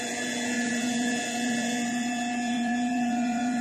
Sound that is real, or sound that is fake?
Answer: fake